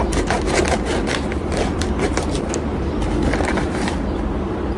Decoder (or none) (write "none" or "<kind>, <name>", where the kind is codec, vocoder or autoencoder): none